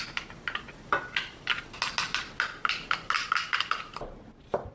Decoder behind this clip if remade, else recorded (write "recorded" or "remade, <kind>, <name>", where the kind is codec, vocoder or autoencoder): recorded